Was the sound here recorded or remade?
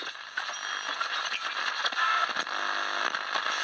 recorded